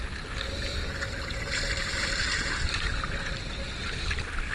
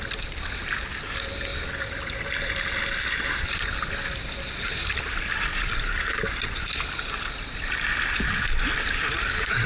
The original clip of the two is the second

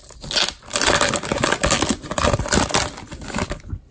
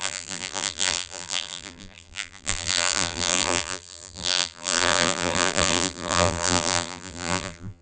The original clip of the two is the first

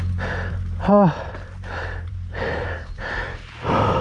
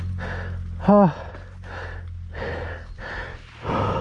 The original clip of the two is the second